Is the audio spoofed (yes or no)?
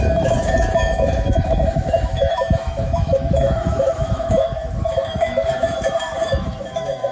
yes